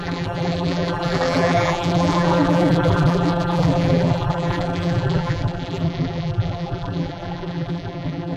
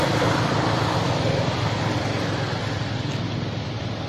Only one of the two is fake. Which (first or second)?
first